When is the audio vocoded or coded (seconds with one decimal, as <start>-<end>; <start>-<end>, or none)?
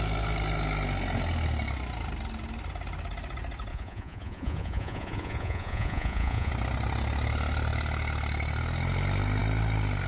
3.7-6.5